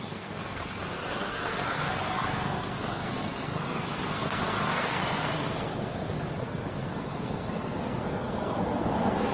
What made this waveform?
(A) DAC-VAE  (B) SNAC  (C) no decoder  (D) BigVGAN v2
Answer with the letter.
B